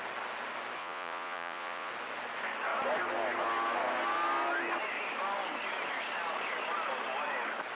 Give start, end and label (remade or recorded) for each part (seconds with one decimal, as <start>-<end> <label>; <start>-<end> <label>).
0.0-0.8 recorded; 0.8-1.9 remade; 1.9-7.7 recorded